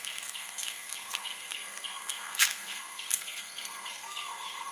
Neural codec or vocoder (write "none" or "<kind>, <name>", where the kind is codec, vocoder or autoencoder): codec, SNAC